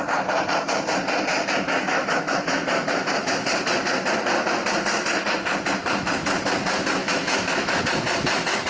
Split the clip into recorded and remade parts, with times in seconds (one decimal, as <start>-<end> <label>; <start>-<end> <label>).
0.0-1.3 recorded; 1.3-3.3 remade; 3.3-7.0 recorded; 7.0-7.8 remade; 7.8-8.7 recorded